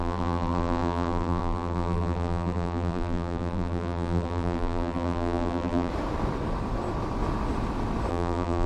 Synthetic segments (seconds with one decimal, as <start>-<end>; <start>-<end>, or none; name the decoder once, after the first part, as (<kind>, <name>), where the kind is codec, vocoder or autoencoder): 0.0-5.9 (vocoder, BigVGAN v2); 8.1-8.7